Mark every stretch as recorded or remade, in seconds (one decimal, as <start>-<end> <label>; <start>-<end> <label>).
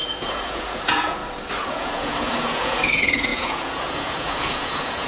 0.0-1.2 remade; 1.2-1.7 recorded; 1.7-5.1 remade